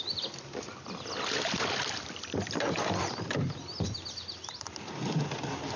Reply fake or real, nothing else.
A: real